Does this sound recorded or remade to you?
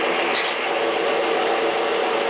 recorded